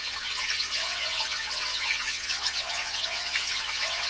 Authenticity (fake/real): fake